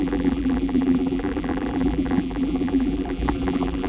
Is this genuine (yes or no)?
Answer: no